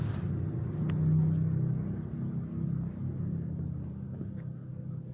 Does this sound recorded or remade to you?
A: recorded